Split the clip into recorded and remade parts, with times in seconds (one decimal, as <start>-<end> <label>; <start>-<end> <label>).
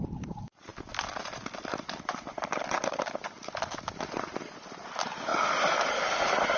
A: 0.0-6.6 recorded